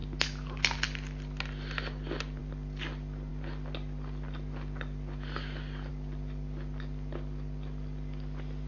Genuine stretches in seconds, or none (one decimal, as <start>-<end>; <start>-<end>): 0.0-8.7

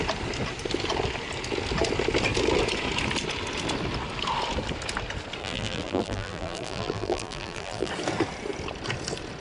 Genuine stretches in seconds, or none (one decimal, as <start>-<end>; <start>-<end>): 0.0-5.4; 7.9-9.4

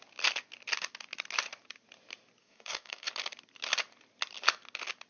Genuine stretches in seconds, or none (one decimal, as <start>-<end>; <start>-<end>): 0.0-2.4; 3.1-5.1

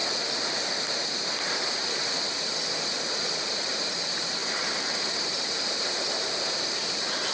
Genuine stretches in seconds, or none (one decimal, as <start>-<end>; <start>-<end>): 0.0-1.7

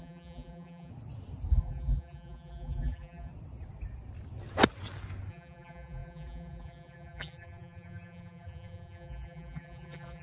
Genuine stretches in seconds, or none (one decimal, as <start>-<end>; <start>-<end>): 0.9-1.5; 3.3-5.3

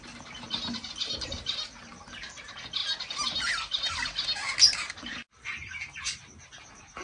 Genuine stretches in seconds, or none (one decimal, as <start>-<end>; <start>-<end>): 0.0-7.0